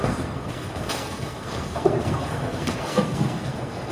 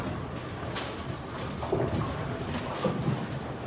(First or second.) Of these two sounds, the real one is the second